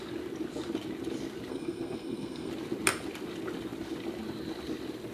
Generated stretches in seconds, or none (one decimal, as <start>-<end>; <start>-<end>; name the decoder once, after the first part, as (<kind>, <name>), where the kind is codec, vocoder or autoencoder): 1.5-2.5 (codec, SNAC)